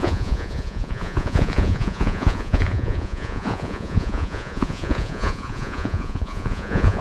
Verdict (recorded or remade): remade